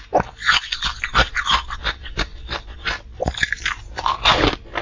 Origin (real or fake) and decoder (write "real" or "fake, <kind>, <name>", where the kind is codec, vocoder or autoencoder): real